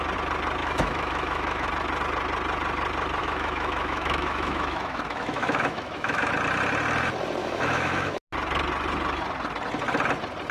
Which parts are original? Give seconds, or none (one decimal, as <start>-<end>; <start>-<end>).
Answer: 0.0-0.6; 1.7-3.2; 6.3-7.4; 8.2-10.5